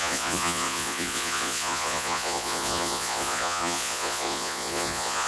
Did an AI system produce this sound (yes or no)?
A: yes